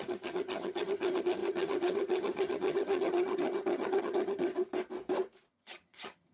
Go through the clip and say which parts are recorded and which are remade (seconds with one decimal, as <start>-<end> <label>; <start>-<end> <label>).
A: 0.0-4.5 remade; 4.5-5.5 recorded; 5.5-6.3 remade